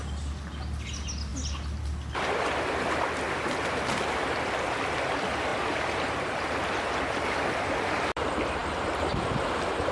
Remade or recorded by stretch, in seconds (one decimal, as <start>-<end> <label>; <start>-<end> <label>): 0.0-9.9 recorded